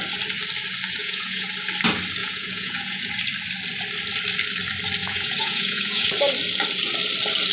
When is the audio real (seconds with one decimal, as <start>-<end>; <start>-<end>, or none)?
0.0-1.0; 1.5-2.2; 3.1-5.0; 6.1-7.5